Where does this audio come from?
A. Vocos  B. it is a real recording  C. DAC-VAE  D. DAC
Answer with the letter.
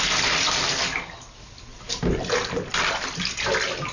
B